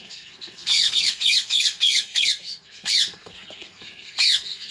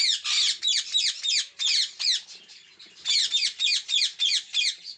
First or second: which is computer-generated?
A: first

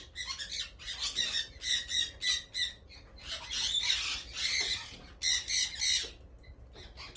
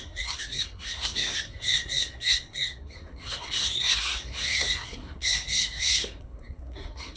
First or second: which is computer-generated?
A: second